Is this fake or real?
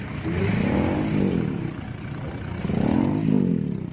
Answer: real